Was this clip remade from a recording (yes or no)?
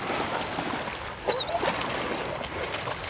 no